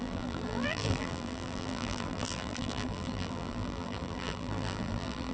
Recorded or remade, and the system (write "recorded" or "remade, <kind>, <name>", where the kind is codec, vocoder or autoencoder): remade, vocoder, BigVGAN v2